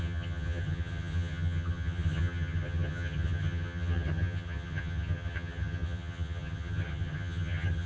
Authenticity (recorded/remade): remade